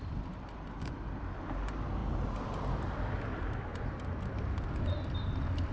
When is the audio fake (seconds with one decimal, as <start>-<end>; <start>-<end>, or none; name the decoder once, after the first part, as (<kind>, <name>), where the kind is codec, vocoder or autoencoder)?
none